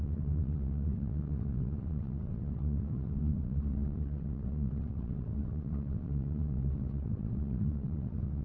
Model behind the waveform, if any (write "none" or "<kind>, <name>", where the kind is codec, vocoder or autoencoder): vocoder, WaveNeXt